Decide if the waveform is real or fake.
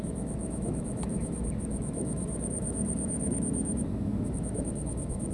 fake